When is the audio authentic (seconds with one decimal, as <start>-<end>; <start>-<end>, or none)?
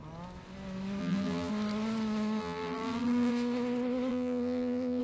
0.0-1.0; 1.5-2.4; 3.3-4.1